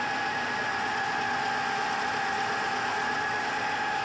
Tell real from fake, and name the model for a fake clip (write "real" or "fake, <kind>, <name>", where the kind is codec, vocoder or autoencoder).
real